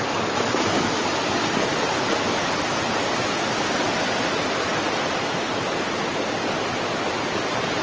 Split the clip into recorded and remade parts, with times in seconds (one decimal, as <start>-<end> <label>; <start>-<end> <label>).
0.0-7.8 recorded